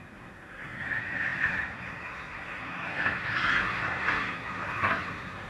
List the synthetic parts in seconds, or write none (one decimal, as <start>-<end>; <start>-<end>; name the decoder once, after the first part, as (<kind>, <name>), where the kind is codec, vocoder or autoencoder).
0.0-5.5 (codec, SNAC)